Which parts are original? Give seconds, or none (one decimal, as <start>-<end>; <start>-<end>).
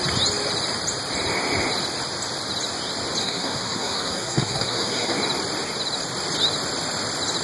0.0-3.2; 5.2-7.4